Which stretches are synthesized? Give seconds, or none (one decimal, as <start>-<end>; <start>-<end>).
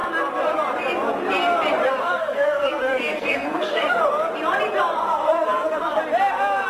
2.0-4.0; 5.0-6.0